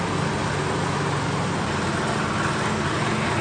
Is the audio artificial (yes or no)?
no